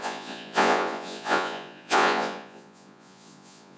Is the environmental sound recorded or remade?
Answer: remade